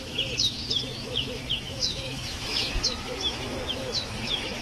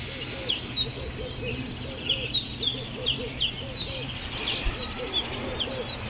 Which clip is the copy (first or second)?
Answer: first